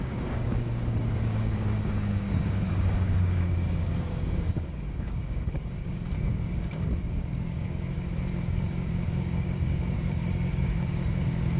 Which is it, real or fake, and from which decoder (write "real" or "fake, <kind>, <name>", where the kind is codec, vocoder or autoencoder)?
fake, codec, DAC